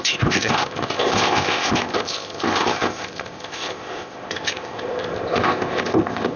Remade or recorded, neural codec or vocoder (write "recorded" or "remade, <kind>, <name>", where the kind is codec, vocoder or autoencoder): remade, codec, ZipCodec